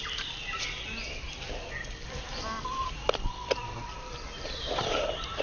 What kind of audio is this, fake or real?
real